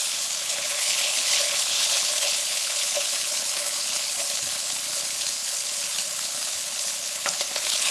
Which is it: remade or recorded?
remade